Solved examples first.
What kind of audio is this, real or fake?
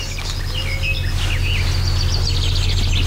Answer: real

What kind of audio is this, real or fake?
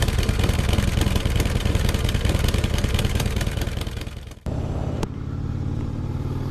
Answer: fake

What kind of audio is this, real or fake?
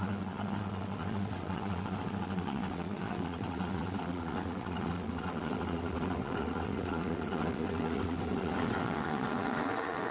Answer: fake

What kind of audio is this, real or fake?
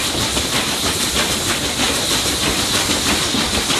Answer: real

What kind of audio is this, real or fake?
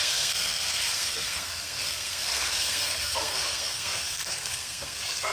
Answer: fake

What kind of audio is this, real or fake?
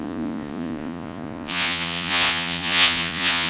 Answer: fake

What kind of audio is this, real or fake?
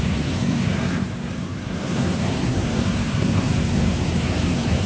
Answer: fake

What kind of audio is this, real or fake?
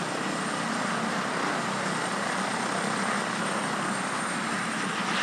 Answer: real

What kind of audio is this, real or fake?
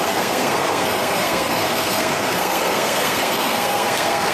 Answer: fake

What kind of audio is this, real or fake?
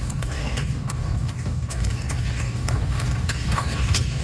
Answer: fake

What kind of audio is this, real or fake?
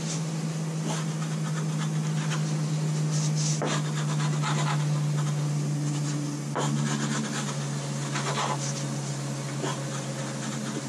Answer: real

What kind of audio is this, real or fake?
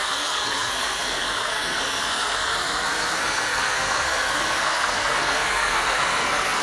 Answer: fake